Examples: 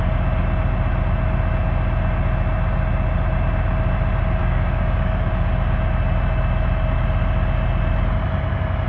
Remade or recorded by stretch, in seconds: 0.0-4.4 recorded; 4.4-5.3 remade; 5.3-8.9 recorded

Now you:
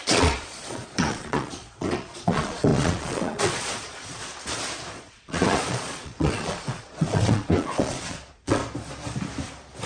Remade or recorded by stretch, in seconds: 0.0-4.3 remade; 4.3-4.9 recorded; 4.9-8.6 remade; 8.6-9.9 recorded